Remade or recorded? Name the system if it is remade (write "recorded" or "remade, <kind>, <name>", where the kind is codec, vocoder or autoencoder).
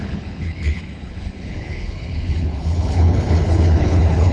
remade, codec, HILCodec